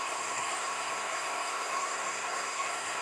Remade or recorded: remade